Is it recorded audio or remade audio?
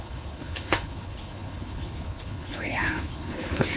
remade